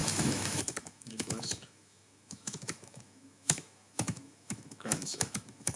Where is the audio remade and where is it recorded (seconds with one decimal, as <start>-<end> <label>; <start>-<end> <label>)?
0.0-5.8 remade